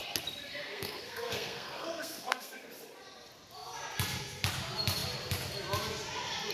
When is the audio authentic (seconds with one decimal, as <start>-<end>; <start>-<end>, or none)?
0.0-0.6; 2.7-6.5

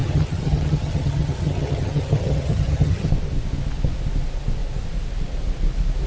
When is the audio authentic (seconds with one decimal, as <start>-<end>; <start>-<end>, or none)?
3.1-6.1

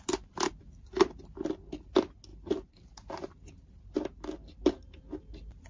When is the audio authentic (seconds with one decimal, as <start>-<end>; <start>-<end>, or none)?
0.0-5.7